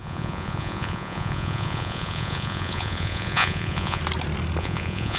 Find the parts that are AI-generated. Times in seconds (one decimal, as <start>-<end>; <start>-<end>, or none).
0.0-4.0; 4.6-5.2